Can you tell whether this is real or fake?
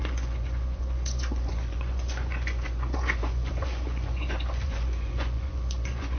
fake